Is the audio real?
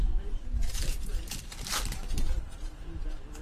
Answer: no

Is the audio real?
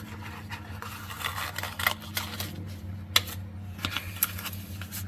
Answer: yes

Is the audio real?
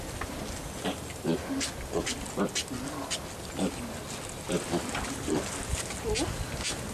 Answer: yes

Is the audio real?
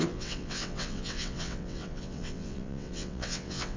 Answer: no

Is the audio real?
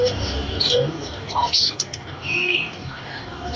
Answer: no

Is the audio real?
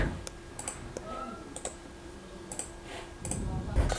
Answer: yes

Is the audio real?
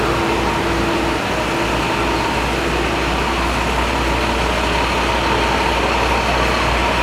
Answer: yes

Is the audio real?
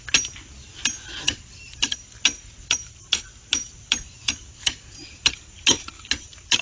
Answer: yes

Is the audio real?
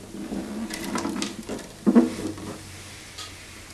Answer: yes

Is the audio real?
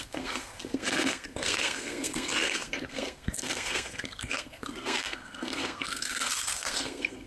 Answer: no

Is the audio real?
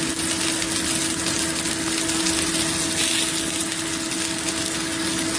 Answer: yes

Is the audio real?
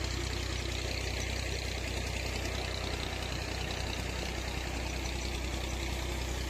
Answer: yes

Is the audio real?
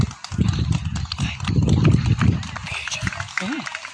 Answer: yes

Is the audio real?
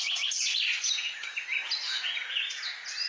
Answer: yes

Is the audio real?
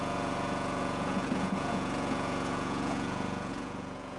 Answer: no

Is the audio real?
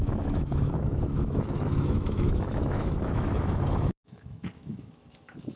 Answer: no